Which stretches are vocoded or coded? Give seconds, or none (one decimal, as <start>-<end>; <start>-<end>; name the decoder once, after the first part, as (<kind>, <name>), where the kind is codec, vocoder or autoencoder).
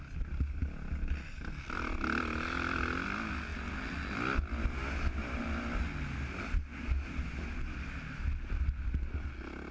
none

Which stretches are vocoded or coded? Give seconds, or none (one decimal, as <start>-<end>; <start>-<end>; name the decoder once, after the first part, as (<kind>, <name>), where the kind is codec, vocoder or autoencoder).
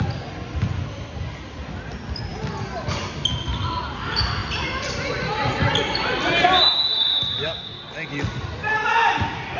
none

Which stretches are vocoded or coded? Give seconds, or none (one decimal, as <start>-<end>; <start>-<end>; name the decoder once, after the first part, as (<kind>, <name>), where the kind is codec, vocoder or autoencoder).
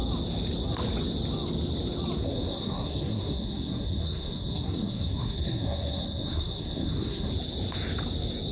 2.2-7.3 (codec, SNAC)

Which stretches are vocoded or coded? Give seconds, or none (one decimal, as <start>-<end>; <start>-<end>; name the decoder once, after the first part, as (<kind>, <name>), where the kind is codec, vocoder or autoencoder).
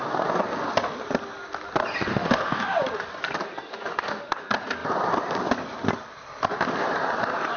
2.1-2.8 (autoencoder, DAC-VAE); 3.7-4.3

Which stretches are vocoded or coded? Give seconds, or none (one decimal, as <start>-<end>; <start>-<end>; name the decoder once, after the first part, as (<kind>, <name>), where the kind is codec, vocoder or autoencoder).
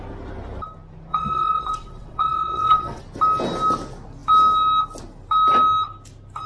1.1-3.0 (vocoder, WaveNeXt)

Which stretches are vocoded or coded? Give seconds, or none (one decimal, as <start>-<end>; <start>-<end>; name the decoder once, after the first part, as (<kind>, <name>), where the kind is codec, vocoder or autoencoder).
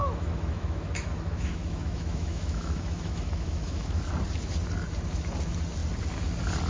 0.0-4.0 (autoencoder, DAC-VAE)